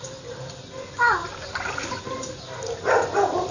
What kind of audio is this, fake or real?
real